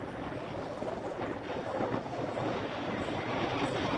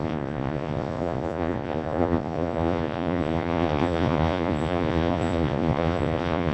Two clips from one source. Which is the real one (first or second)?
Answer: first